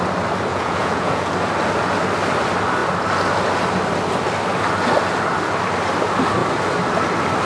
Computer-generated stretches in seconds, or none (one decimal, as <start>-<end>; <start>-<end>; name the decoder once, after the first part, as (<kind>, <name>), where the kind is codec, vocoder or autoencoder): 0.5-1.3 (vocoder, Vocos)